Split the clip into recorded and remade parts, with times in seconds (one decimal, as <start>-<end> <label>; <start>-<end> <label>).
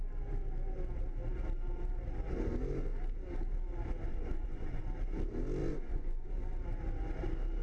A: 0.0-4.1 recorded; 4.1-4.8 remade; 4.8-5.6 recorded; 5.6-6.3 remade; 6.3-7.6 recorded